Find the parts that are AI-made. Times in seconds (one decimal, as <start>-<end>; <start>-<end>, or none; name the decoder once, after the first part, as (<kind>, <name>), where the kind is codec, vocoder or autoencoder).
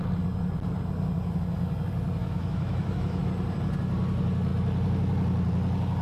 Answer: 2.2-3.2 (autoencoder, DAC-VAE)